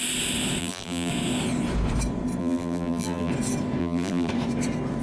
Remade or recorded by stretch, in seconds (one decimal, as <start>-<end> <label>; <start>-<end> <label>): 0.0-0.6 recorded; 0.6-1.1 remade; 1.1-2.4 recorded; 2.4-3.3 remade; 3.3-3.8 recorded; 3.8-4.3 remade; 4.3-5.0 recorded